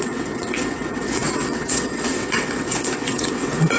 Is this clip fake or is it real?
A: fake